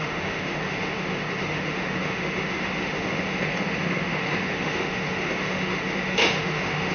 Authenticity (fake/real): fake